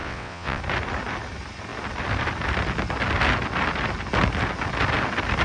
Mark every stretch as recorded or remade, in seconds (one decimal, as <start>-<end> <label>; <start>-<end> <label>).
0.0-0.6 remade; 0.6-5.4 recorded

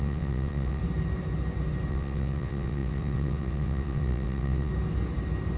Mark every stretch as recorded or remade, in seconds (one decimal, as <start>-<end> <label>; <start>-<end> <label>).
0.0-0.8 remade; 0.8-1.9 recorded; 1.9-4.7 remade; 4.7-5.6 recorded

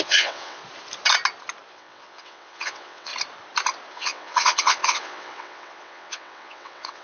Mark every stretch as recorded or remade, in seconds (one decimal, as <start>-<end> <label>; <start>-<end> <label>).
0.0-0.6 remade; 0.6-1.7 recorded; 1.7-3.1 remade; 3.1-3.9 recorded; 3.9-7.0 remade

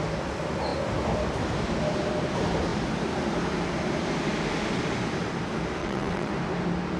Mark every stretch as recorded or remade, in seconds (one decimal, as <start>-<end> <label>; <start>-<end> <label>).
0.0-5.8 recorded; 5.8-6.3 remade; 6.3-7.0 recorded

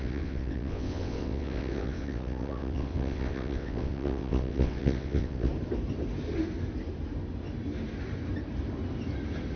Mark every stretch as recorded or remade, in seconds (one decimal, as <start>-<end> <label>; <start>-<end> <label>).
0.0-5.5 remade; 5.5-9.6 recorded

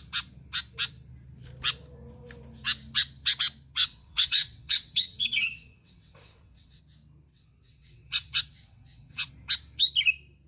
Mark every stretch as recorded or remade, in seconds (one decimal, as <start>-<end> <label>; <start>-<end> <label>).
0.0-3.8 recorded; 3.8-6.8 remade; 6.8-7.3 recorded; 7.3-9.3 remade; 9.3-10.5 recorded

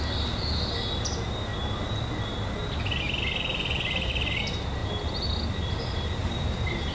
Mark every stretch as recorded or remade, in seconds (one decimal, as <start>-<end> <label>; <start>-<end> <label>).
0.0-6.9 recorded

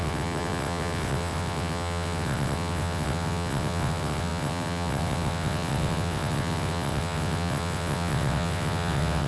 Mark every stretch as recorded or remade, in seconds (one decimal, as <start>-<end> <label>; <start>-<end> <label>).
0.0-9.3 remade